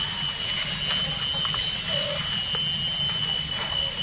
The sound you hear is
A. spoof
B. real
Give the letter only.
B